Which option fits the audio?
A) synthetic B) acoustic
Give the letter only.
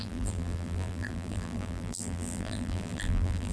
A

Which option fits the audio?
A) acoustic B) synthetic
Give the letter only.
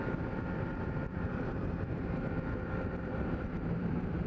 B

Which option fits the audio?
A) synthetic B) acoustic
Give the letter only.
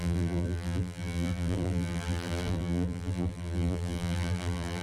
A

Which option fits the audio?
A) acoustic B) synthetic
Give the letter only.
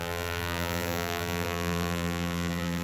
B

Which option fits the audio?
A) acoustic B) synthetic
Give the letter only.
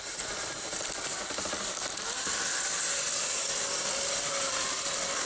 B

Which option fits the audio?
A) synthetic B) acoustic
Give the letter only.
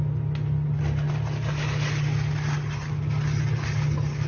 B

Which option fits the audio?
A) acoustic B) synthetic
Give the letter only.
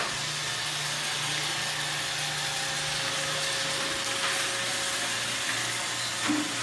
A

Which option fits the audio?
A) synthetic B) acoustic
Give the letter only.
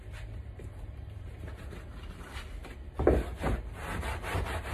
A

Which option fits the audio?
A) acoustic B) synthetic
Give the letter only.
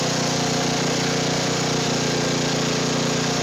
A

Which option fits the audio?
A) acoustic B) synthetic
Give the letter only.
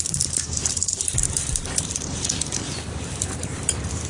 B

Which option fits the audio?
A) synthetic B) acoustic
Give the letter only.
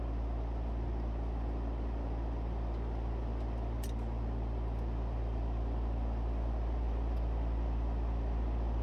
B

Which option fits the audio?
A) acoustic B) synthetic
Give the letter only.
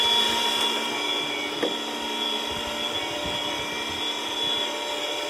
A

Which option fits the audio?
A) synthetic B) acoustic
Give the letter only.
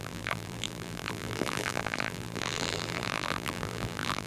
A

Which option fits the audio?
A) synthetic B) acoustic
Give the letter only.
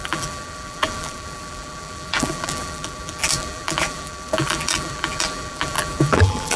A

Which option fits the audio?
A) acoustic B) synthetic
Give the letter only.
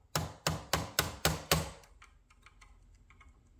A